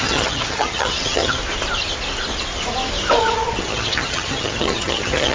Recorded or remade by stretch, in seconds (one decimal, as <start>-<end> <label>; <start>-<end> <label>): 0.0-1.4 remade; 1.4-3.6 recorded; 3.6-5.3 remade